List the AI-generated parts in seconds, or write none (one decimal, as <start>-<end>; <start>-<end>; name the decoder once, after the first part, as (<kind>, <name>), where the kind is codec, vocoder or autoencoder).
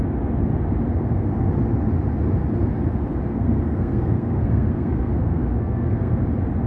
0.9-1.5 (codec, SNAC); 3.3-6.2